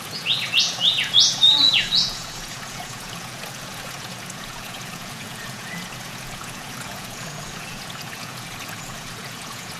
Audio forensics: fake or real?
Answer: fake